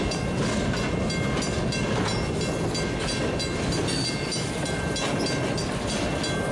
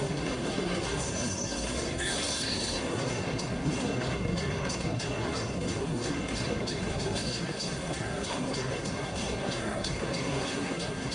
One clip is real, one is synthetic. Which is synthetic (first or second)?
second